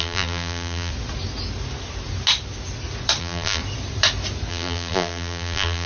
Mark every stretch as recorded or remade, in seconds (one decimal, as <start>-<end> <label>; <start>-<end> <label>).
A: 0.0-0.9 remade; 0.9-3.2 recorded; 3.2-3.6 remade; 3.6-4.5 recorded; 4.5-5.9 remade